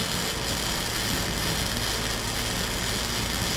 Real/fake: real